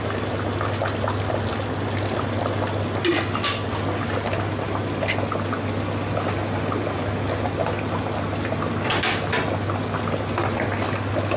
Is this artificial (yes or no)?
no